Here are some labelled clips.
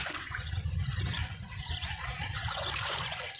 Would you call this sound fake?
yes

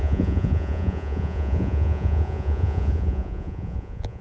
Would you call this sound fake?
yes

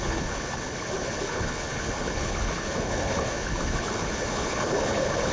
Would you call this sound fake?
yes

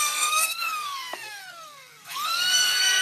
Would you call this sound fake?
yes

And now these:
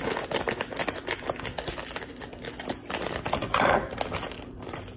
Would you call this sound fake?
no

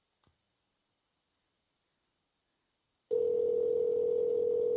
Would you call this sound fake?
no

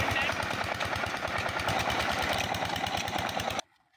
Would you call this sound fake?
yes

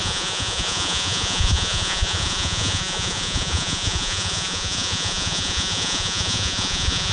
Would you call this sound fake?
yes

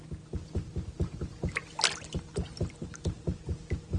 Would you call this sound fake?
no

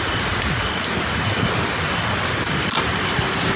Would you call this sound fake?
no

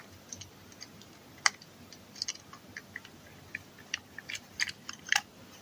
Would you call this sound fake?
no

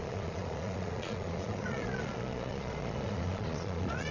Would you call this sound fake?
yes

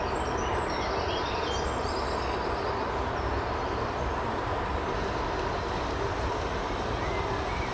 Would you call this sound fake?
no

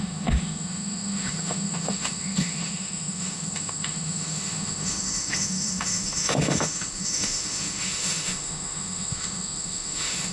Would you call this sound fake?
yes